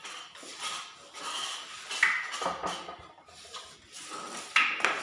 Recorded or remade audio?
recorded